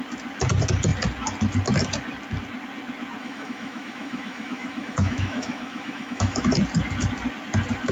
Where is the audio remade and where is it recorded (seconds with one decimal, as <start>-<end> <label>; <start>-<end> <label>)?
0.0-3.2 recorded; 3.2-6.5 remade; 6.5-7.9 recorded